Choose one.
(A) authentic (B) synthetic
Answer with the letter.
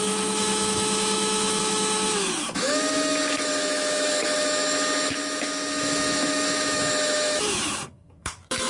B